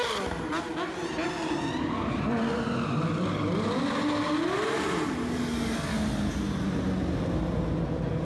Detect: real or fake real